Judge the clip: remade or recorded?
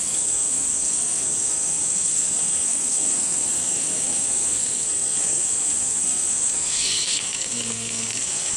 remade